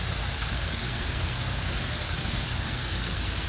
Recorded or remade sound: remade